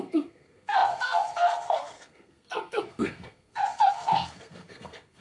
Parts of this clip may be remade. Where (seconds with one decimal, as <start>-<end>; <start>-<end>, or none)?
0.0-5.2